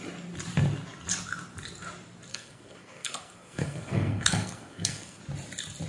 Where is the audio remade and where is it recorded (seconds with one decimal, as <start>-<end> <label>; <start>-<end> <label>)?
0.0-2.3 recorded; 2.3-5.2 remade; 5.2-5.9 recorded